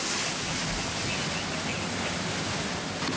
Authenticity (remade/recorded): recorded